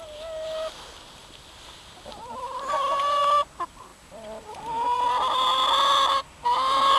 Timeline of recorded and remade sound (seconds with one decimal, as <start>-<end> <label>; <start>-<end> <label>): 0.0-1.2 recorded; 1.2-3.0 remade; 3.0-3.9 recorded; 3.9-7.0 remade